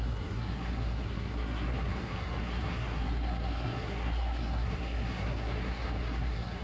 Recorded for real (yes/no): no